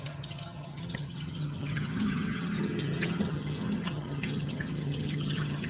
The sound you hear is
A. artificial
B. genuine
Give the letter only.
A